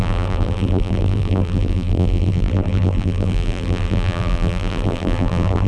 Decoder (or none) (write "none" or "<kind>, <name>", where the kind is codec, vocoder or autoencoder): vocoder, BigVGAN v2